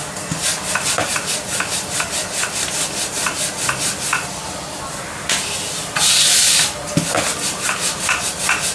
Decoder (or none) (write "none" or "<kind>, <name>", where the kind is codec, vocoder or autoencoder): none